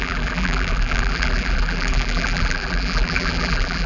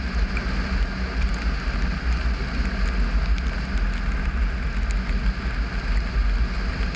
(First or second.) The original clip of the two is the second